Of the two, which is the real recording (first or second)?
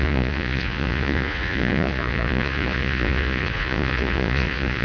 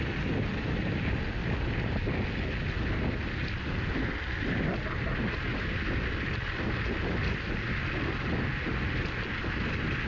second